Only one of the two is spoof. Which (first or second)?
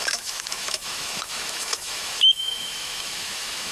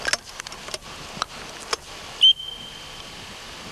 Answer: first